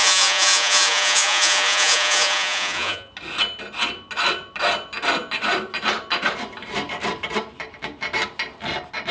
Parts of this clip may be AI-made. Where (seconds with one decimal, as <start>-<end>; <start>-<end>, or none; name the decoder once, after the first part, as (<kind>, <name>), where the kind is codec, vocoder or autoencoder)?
0.0-3.1 (vocoder, Vocos)